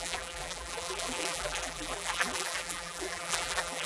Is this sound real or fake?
fake